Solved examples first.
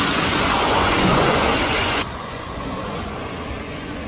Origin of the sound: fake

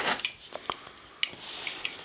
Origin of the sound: real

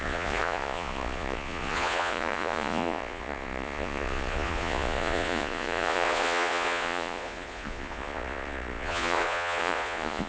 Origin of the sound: fake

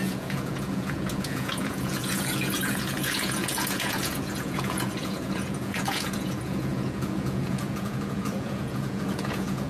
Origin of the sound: fake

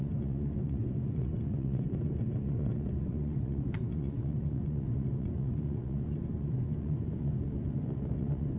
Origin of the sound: fake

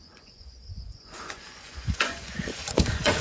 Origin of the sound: fake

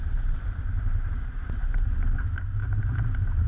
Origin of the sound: real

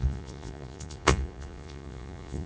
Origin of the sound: fake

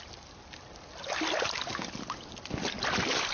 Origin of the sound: real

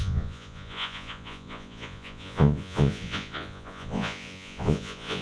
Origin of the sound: fake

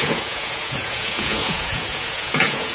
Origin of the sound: fake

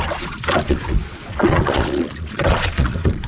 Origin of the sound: fake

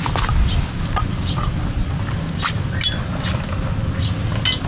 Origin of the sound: real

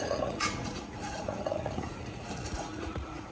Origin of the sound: fake